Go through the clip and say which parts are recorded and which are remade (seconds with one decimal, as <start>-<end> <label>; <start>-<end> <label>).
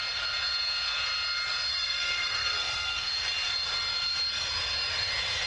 0.0-1.7 recorded; 1.7-3.1 remade; 3.1-5.5 recorded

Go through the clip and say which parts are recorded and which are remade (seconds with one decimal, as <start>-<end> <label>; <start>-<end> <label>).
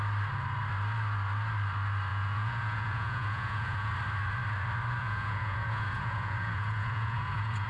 0.0-2.1 recorded; 2.1-3.9 remade; 3.9-5.0 recorded; 5.0-7.7 remade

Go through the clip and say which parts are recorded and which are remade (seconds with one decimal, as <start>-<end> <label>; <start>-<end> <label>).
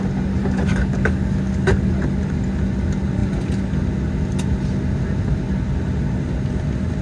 0.0-0.4 recorded; 0.4-1.9 remade; 1.9-7.0 recorded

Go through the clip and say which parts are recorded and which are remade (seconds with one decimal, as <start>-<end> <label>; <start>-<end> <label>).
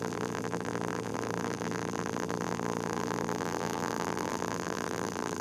0.0-5.4 remade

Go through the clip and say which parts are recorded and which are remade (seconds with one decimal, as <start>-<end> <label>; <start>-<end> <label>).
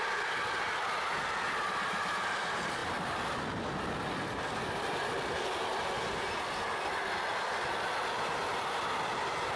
0.0-9.6 recorded